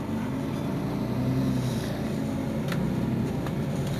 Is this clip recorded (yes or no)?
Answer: yes